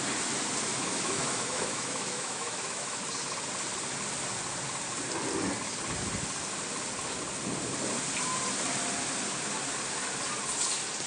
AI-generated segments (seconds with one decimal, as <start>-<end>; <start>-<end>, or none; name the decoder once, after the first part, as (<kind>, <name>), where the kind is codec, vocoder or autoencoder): 0.7-3.0 (autoencoder, DAC-VAE)